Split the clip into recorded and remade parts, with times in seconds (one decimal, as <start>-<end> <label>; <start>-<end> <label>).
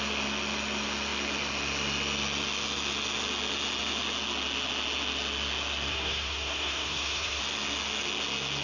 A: 0.0-5.9 recorded; 5.9-7.4 remade; 7.4-8.6 recorded